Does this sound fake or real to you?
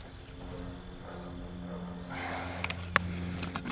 real